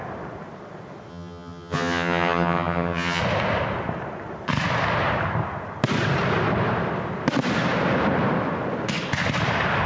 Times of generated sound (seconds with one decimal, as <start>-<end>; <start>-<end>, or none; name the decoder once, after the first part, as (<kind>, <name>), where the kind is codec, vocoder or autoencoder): 1.1-3.2 (vocoder, HiFi-GAN)